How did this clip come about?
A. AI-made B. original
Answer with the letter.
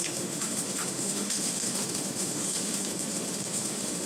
A